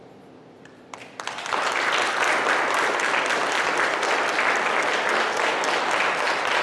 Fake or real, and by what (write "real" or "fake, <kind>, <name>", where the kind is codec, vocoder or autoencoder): fake, vocoder, BigVGAN v2